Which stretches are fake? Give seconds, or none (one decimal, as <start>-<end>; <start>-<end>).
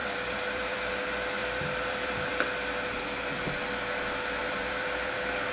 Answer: 0.0-0.9; 1.4-2.3; 4.4-5.5